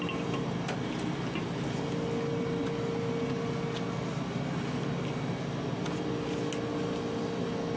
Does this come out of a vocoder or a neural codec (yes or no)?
no